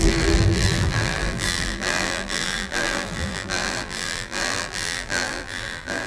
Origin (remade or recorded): remade